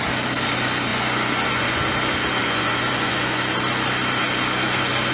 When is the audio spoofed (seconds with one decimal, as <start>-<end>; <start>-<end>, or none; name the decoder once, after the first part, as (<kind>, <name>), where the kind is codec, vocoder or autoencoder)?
0.9-1.8 (vocoder, Vocos); 2.4-3.4